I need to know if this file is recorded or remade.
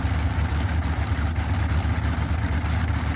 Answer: recorded